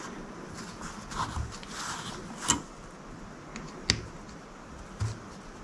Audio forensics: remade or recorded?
recorded